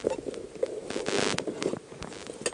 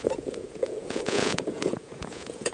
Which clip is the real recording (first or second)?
first